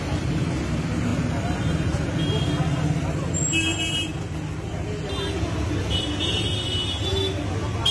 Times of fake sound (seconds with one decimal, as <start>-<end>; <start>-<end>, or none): none